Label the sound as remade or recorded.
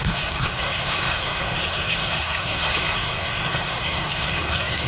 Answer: remade